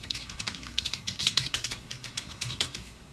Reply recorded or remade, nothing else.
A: remade